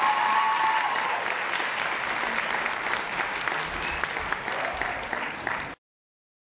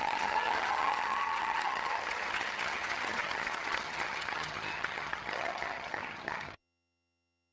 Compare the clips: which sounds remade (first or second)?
second